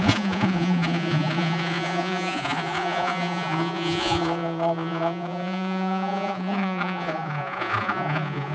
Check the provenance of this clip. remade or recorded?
remade